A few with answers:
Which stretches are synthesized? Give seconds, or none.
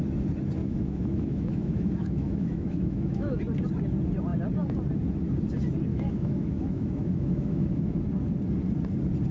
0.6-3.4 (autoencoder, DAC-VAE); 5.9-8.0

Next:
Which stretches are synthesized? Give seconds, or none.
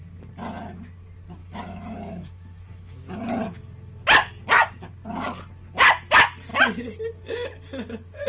1.4-3.2 (autoencoder, DAC-VAE)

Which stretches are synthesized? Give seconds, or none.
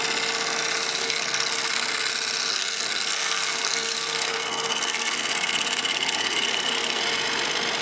1.0-2.1 (codec, SNAC); 2.5-7.0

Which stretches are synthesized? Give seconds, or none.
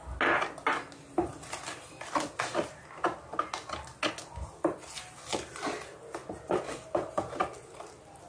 none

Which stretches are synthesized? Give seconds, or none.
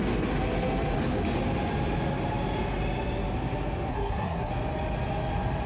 3.9-4.5 (codec, SNAC)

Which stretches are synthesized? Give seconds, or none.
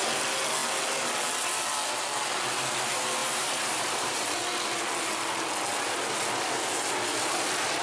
3.2-4.3 (vocoder, BigVGAN v2)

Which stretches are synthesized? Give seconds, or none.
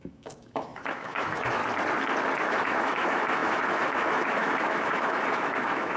0.0-1.6 (autoencoder, DAC-VAE); 2.4-6.0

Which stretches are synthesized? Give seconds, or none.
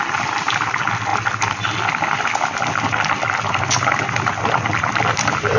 none